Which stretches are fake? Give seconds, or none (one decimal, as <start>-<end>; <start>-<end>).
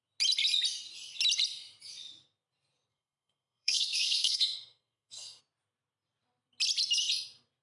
2.9-5.4